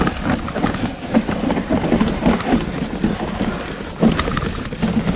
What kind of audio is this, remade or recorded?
recorded